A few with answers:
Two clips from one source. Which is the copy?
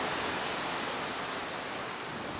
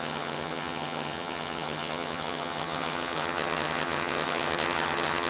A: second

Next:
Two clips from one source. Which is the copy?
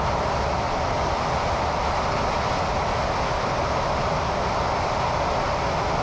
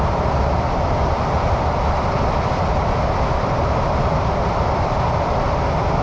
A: second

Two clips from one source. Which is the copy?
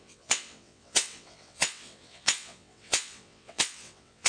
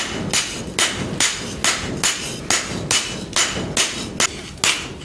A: first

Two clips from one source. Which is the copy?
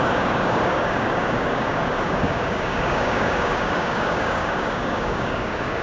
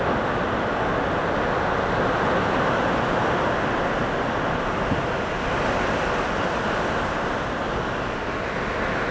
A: first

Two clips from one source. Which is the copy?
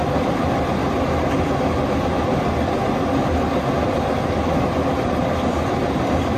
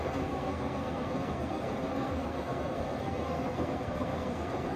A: second